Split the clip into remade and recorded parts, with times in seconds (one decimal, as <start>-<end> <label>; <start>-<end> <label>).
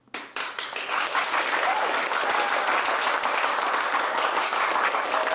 0.0-0.4 remade; 0.4-0.9 recorded; 0.9-2.0 remade; 2.0-3.8 recorded; 3.8-5.3 remade